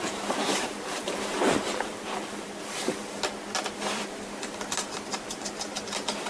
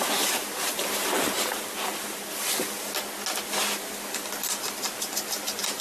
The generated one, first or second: first